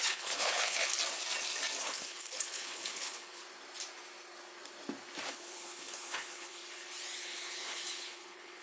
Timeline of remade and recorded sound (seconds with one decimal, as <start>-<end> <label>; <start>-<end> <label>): 0.0-0.9 remade; 0.9-1.8 recorded; 1.8-3.4 remade; 3.4-5.3 recorded; 5.3-6.6 remade; 6.6-7.2 recorded; 7.2-8.6 remade

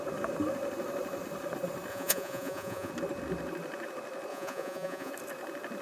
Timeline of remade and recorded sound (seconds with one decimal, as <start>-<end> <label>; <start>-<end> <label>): 0.0-1.9 recorded; 1.9-2.9 remade; 2.9-4.3 recorded; 4.3-5.1 remade; 5.1-5.8 recorded

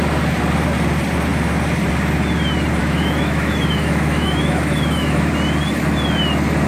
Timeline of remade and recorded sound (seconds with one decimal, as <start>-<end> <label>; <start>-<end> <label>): 0.0-2.8 recorded; 2.8-5.3 remade; 5.3-6.7 recorded

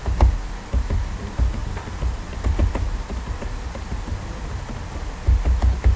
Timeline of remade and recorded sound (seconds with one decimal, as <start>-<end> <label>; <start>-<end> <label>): 0.0-1.6 recorded; 1.6-4.5 remade; 4.5-6.0 recorded

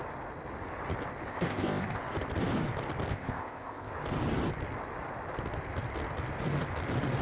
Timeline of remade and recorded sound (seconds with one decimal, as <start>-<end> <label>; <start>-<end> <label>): 0.0-1.3 recorded; 1.3-2.0 remade; 2.0-3.1 recorded; 3.1-3.9 remade; 3.9-7.2 recorded

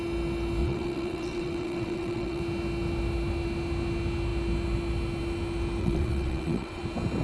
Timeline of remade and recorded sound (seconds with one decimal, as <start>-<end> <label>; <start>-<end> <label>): 0.0-0.6 recorded; 0.6-2.4 remade; 2.4-5.8 recorded; 5.8-6.8 remade; 6.8-7.2 recorded

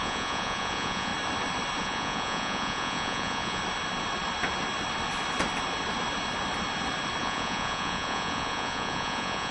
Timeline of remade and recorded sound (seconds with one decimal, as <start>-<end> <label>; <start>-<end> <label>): 0.0-1.1 remade; 1.1-1.8 recorded; 1.8-3.6 remade; 3.6-7.2 recorded; 7.2-9.5 remade